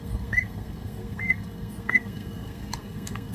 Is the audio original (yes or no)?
no